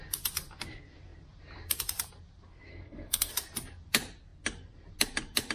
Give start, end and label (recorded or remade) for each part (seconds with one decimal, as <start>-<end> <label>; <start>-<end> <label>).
0.0-2.7 recorded; 2.7-3.3 remade; 3.3-5.5 recorded